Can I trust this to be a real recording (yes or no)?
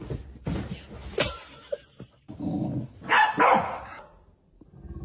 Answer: yes